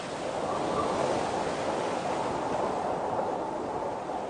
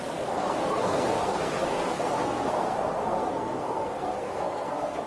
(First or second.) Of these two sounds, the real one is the first